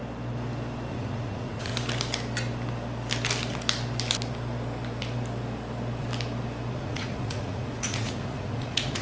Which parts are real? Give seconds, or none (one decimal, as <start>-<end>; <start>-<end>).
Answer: 0.0-0.9; 1.7-6.7